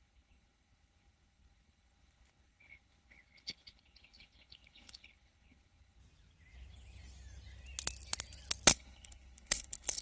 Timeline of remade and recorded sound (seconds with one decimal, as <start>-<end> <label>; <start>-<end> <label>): 0.0-6.0 remade; 6.0-8.7 recorded; 8.7-10.0 remade